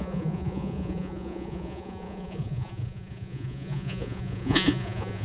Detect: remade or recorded remade